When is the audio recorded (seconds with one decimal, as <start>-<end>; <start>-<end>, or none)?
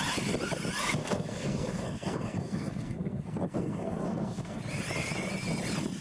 0.0-1.0; 4.6-6.0